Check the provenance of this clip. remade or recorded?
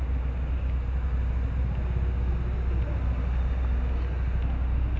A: recorded